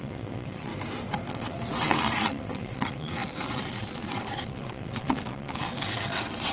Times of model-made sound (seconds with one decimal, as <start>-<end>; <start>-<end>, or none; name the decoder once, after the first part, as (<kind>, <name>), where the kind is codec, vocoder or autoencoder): 0.0-0.7 (vocoder, WaveNeXt); 1.3-6.5